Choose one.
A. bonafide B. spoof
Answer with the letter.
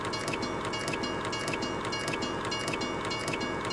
A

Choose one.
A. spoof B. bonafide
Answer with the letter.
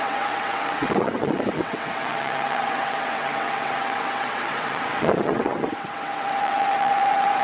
A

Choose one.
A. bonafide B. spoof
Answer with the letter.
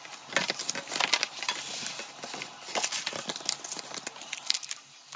A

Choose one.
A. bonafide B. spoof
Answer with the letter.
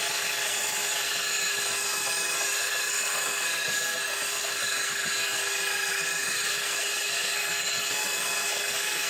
B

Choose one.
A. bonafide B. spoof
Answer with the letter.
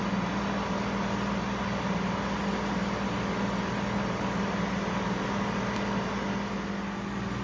A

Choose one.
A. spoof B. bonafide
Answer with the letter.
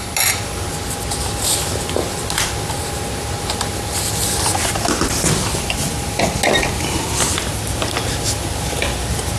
B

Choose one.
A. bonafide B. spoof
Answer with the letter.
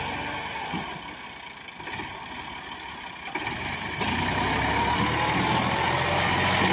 A